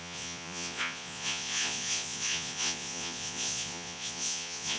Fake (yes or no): yes